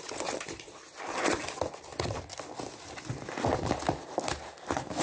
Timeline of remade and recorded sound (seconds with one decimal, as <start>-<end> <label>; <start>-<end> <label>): 0.0-5.0 recorded